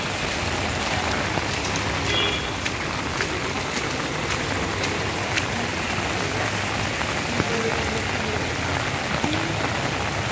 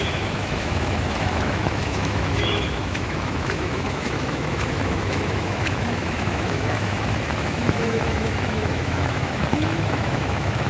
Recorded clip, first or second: first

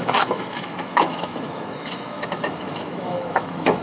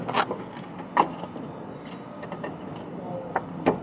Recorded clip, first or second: second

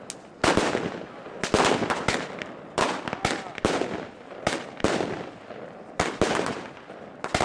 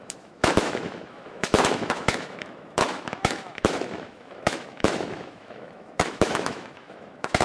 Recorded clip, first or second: first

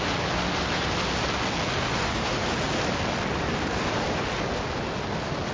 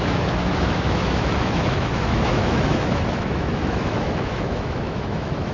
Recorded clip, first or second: first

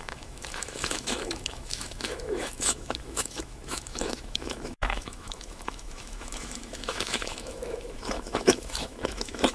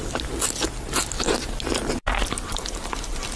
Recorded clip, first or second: second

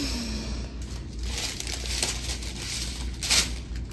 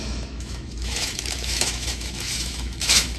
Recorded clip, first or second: first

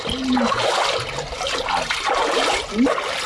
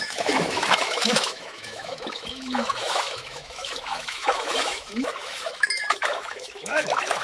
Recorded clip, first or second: first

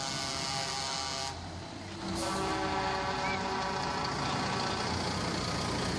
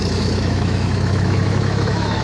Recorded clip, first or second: first